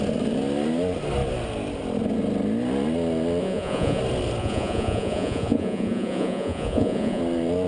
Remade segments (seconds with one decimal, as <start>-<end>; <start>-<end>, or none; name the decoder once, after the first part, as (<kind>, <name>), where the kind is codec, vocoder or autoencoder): 3.4-4.0 (vocoder, Vocos); 4.4-7.2